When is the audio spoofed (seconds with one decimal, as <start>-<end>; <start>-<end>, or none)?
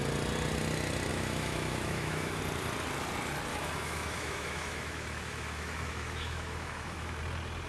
1.1-2.4; 3.5-7.2